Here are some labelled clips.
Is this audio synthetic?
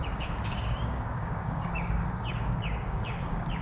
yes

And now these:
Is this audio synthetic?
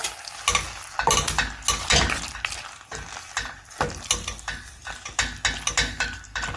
no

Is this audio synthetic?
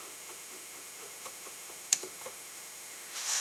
yes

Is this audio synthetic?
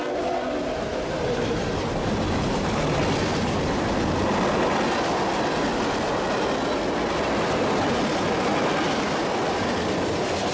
no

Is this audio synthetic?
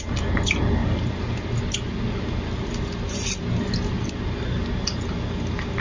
no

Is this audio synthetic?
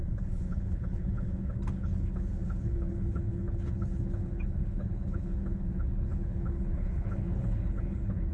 yes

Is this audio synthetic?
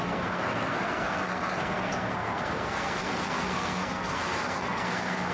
yes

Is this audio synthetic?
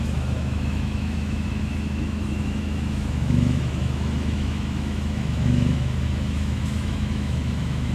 yes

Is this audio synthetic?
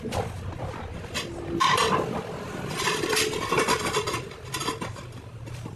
no